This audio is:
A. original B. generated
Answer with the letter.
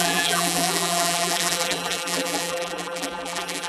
B